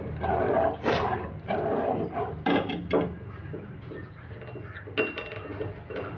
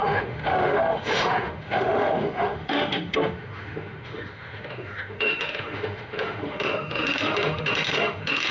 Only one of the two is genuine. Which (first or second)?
first